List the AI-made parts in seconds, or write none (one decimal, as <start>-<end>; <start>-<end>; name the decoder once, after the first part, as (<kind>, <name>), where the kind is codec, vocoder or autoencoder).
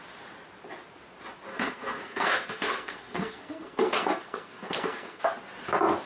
1.5-5.2 (codec, SNAC)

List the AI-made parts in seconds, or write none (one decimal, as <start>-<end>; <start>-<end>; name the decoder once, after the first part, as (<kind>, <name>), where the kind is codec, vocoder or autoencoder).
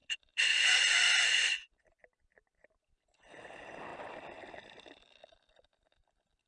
0.0-0.8 (vocoder, BigVGAN v2)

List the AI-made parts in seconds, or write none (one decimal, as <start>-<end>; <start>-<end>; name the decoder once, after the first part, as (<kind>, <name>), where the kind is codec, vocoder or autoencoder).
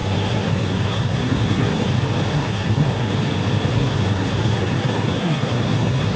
0.0-1.9 (codec, SNAC); 2.3-3.1; 3.7-6.2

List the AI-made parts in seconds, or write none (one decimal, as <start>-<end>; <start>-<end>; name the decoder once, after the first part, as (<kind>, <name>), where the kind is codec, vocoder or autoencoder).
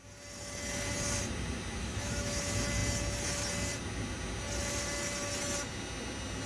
1.8-2.4 (autoencoder, DAC-VAE)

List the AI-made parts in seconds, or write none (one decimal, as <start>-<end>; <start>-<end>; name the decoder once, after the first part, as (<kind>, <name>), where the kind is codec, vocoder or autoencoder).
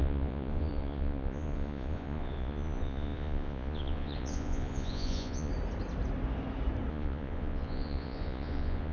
0.0-5.5 (vocoder, Vocos); 6.9-8.9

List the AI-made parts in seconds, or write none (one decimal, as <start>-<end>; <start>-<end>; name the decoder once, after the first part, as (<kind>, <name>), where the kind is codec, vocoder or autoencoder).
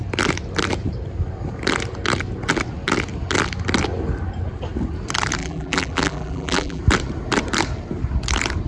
5.4-6.8 (vocoder, BigVGAN v2)